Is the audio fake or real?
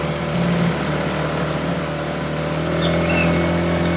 real